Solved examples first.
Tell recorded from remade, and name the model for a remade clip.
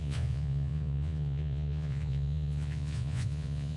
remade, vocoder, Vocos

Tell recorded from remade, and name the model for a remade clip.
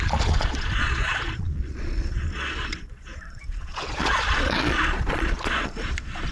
remade, vocoder, Vocos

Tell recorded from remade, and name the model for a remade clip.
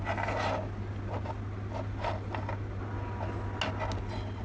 recorded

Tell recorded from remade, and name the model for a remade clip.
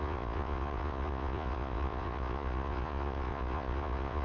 remade, vocoder, Vocos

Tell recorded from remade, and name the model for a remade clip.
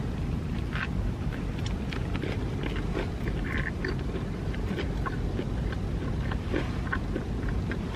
recorded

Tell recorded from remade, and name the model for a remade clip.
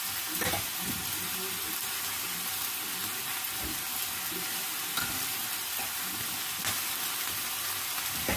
recorded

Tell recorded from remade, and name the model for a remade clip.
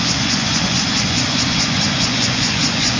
remade, vocoder, Vocos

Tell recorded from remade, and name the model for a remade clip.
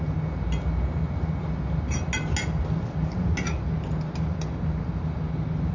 recorded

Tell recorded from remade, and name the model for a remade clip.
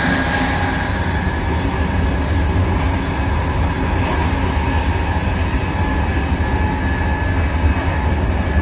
recorded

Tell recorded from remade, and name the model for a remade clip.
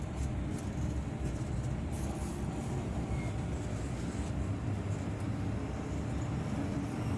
recorded